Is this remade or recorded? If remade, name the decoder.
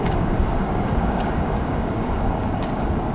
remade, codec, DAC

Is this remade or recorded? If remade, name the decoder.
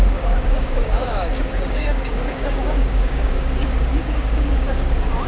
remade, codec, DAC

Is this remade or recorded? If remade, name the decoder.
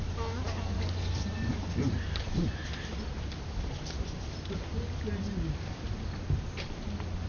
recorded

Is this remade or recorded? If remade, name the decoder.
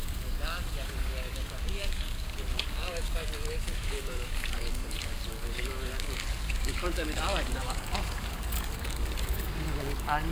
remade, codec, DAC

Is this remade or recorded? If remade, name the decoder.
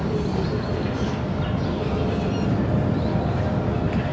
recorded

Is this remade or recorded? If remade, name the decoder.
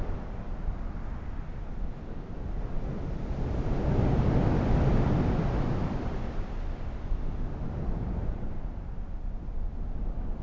recorded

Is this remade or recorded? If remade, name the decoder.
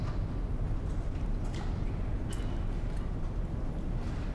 recorded